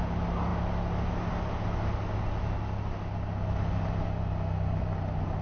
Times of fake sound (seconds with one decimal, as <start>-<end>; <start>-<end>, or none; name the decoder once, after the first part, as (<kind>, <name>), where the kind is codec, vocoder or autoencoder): none